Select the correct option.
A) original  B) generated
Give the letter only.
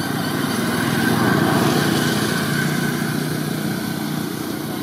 A